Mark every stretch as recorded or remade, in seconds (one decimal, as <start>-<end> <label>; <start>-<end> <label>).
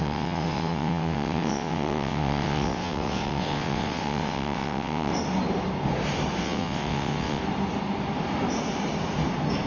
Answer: 0.0-5.1 remade; 5.1-6.4 recorded; 6.4-7.4 remade; 7.4-9.7 recorded